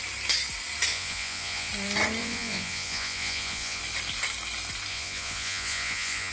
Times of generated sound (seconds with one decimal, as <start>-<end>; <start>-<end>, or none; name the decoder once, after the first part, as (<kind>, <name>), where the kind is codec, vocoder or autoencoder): 0.9-1.7 (vocoder, Vocos); 2.2-3.8; 4.9-6.3